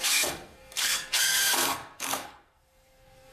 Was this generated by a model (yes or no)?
yes